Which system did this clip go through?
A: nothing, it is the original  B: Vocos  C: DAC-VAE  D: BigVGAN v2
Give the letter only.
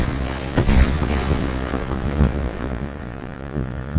B